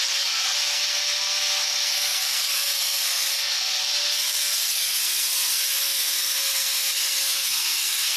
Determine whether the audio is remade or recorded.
remade